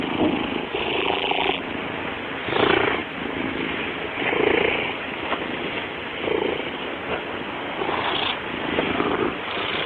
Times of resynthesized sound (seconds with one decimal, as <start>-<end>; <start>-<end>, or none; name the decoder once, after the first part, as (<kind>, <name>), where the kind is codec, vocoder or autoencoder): 1.0-1.6 (vocoder, BigVGAN v2)